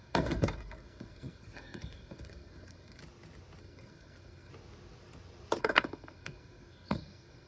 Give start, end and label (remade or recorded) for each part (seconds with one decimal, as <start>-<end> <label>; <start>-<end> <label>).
0.0-3.0 remade; 3.0-3.6 recorded; 3.6-4.5 remade; 4.5-5.6 recorded; 5.6-7.5 remade